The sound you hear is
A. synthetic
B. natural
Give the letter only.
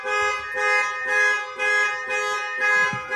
B